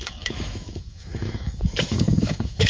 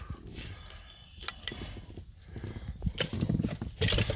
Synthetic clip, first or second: first